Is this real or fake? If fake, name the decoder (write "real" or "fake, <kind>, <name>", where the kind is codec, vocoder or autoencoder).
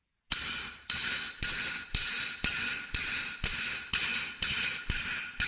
real